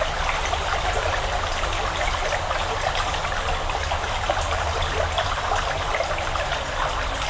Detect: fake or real real